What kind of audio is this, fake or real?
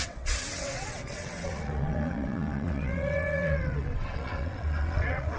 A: fake